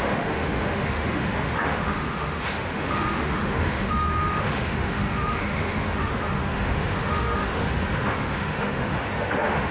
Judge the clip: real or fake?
fake